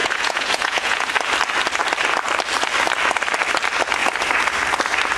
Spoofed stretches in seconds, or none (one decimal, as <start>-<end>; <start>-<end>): 0.0-1.1